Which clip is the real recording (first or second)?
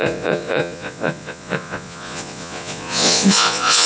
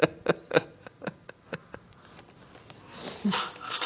second